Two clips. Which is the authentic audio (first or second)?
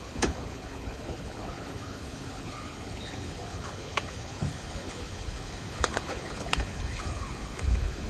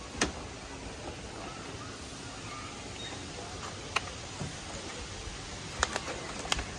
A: second